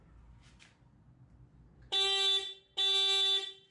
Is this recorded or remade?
recorded